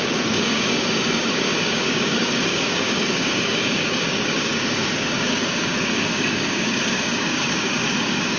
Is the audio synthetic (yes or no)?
yes